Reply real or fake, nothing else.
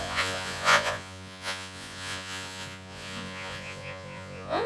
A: fake